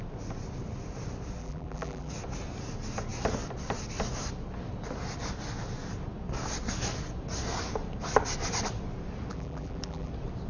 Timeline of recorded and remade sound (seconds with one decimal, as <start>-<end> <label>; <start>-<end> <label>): 0.0-1.4 recorded; 1.4-2.1 remade; 2.1-9.3 recorded; 9.3-10.1 remade; 10.1-10.5 recorded